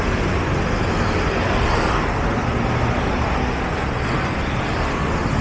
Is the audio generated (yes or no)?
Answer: no